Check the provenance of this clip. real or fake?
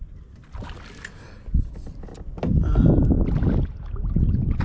real